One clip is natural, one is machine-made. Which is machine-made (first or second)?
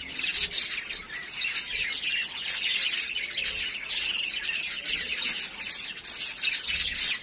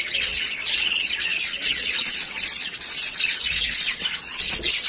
second